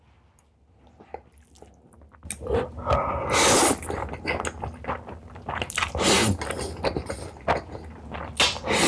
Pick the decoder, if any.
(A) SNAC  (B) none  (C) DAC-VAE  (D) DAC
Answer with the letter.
B